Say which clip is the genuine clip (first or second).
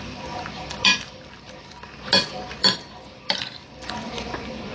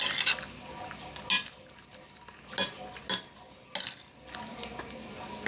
second